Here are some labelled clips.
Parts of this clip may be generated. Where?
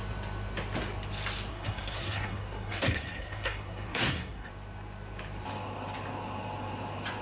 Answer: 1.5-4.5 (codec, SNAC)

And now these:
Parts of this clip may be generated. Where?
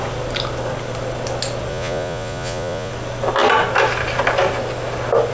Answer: 1.7-2.9 (vocoder, Vocos)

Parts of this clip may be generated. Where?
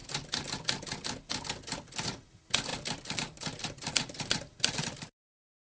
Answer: 2.7-5.7 (vocoder, BigVGAN v2)